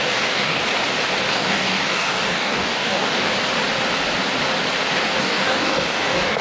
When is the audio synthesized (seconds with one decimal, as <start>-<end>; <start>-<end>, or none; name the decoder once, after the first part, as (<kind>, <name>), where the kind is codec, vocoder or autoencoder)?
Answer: 0.0-0.6 (codec, DAC); 1.3-3.3; 5.2-6.4